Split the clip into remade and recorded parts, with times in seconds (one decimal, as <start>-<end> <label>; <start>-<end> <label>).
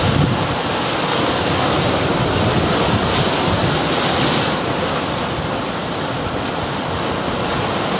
0.0-8.0 recorded